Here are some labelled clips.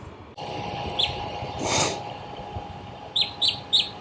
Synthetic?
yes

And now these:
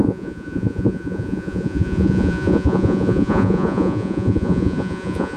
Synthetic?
yes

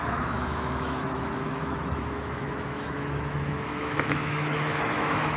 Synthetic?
yes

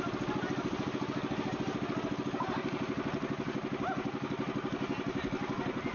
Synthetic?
no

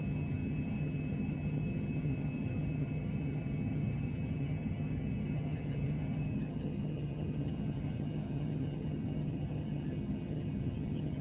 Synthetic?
yes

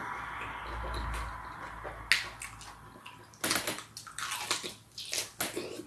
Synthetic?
no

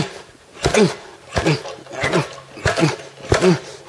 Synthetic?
no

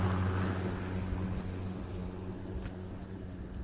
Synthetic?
no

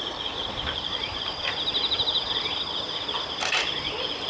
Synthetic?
no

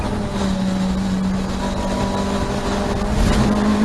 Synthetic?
no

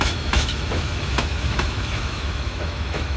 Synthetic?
yes